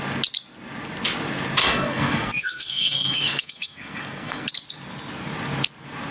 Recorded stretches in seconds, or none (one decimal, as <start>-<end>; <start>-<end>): 0.0-1.6; 4.5-6.1